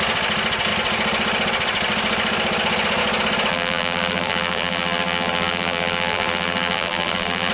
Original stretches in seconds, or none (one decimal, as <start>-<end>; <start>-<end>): 0.0-3.5